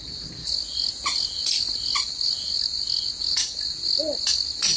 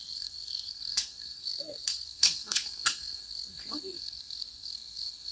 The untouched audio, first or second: first